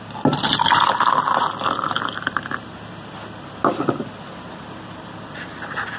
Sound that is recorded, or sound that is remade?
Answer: recorded